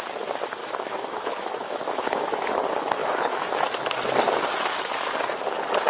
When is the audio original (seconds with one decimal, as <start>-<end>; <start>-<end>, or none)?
0.0-0.6; 2.5-3.0; 3.9-5.9